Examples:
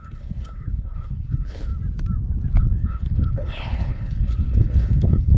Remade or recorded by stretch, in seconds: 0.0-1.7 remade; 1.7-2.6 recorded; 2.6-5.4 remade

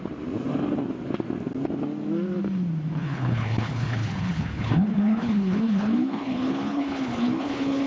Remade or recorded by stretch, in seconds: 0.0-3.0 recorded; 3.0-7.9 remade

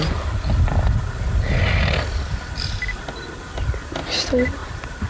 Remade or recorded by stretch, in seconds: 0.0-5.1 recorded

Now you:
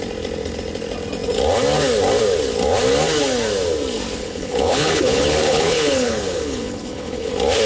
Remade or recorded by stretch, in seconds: 0.0-4.2 recorded; 4.2-7.3 remade; 7.3-7.7 recorded

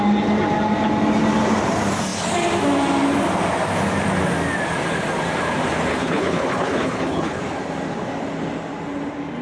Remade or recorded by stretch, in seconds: 0.0-5.9 recorded; 5.9-7.4 remade; 7.4-9.4 recorded